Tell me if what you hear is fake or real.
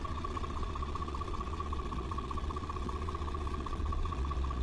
fake